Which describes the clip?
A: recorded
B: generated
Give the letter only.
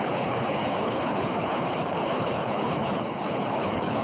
B